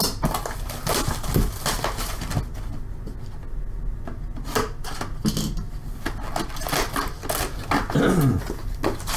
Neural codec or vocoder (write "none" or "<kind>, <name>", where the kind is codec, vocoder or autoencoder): none